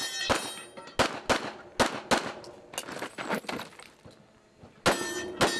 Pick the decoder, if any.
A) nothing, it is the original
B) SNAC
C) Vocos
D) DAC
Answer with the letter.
A